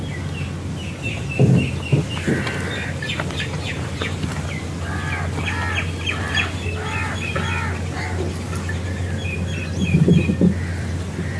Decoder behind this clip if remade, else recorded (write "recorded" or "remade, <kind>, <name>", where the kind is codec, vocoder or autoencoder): recorded